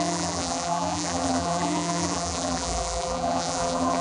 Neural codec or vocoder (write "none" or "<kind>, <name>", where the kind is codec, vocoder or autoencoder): vocoder, BigVGAN v2